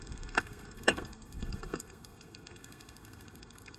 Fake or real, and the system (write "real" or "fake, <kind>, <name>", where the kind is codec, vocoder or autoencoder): fake, codec, SNAC